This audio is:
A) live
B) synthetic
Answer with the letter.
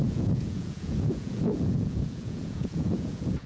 B